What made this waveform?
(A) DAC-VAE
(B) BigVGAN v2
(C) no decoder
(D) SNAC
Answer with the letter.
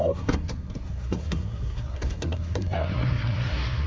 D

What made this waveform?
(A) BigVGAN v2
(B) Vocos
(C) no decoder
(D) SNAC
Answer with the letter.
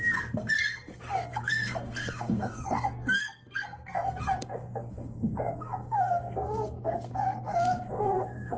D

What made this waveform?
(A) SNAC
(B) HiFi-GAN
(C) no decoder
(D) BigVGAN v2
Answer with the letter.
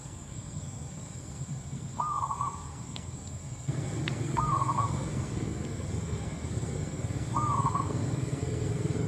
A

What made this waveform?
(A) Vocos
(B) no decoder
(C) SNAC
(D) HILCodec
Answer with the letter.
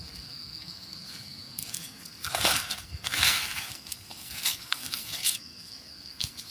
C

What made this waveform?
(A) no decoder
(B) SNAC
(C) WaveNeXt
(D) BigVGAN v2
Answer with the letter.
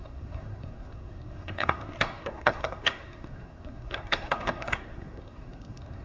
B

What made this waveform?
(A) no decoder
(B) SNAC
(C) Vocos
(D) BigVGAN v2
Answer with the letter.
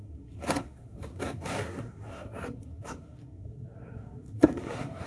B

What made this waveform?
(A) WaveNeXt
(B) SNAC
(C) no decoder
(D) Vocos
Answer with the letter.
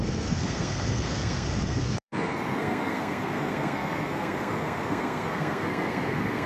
B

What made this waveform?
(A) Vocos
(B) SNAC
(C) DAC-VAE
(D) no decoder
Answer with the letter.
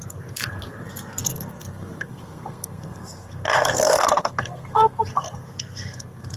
B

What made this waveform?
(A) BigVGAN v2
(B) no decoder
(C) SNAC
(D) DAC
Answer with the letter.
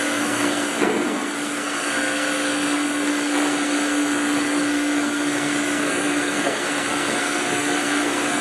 C